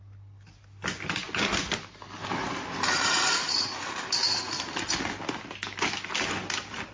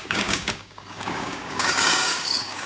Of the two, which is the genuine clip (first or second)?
first